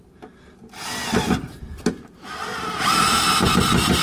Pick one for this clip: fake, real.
fake